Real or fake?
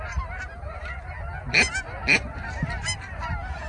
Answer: real